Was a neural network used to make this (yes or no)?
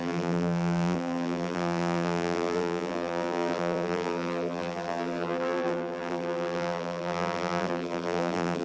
yes